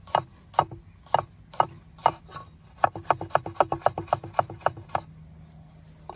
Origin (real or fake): real